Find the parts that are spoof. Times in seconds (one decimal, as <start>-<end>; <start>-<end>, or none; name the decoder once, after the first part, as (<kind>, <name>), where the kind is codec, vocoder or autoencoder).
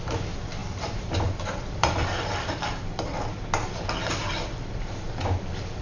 0.6-3.4 (vocoder, BigVGAN v2); 4.2-4.9